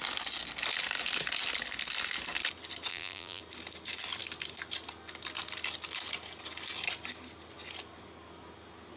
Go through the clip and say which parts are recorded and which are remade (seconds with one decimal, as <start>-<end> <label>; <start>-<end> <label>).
0.0-2.9 recorded; 2.9-3.4 remade; 3.4-9.0 recorded